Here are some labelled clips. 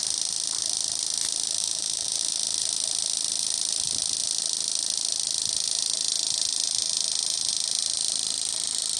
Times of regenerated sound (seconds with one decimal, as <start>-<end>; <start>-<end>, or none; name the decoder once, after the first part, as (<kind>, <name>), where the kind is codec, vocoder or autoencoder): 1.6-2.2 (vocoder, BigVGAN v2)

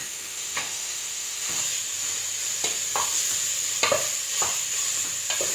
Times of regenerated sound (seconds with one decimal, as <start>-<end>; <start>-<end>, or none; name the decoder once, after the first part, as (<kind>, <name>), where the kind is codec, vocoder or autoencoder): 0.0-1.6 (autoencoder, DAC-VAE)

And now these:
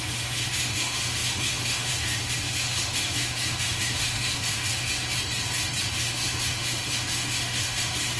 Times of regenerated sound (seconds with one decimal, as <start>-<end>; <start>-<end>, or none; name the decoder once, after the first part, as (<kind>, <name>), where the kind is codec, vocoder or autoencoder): 0.0-4.9 (autoencoder, DAC-VAE); 5.9-8.2

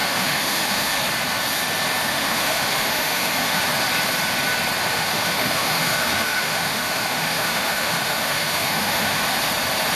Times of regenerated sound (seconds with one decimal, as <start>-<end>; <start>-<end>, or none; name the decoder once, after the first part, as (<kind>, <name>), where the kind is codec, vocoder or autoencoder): 0.0-1.0 (autoencoder, DAC-VAE); 2.0-3.6; 4.9-9.2

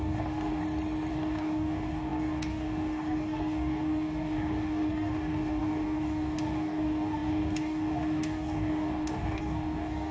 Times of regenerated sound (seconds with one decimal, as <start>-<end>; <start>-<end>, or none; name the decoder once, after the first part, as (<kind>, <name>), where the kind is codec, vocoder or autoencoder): 0.0-0.6 (codec, DAC); 1.1-10.1

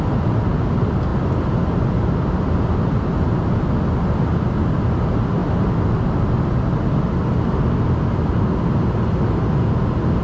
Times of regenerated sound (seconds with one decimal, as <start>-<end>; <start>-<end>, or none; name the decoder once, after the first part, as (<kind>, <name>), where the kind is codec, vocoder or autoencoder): none